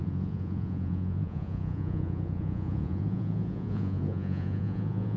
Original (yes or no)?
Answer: no